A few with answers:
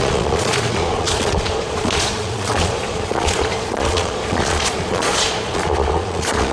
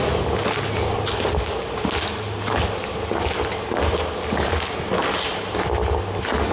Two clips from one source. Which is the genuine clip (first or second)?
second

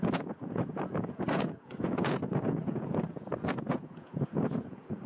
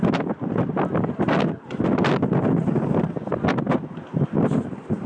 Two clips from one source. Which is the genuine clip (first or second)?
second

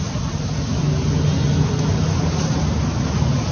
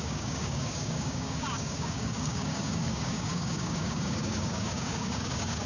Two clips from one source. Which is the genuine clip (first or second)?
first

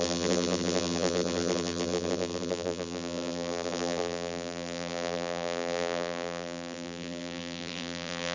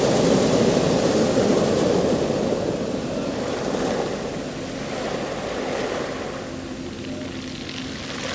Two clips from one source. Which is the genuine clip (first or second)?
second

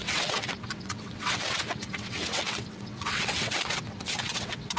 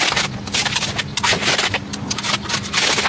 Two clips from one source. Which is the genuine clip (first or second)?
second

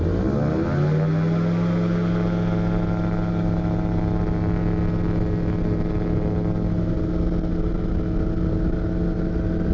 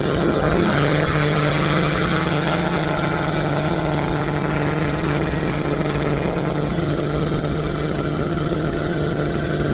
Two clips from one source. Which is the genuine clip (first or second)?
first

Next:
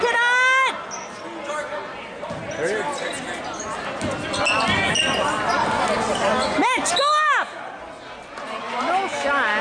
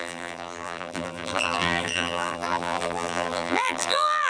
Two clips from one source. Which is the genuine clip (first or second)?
first